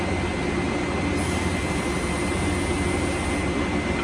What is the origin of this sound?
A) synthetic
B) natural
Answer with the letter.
B